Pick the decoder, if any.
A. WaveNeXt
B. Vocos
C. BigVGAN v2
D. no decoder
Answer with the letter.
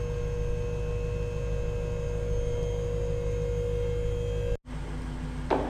D